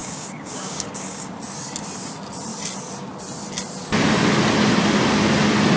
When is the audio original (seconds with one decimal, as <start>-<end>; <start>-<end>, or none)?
1.3-5.8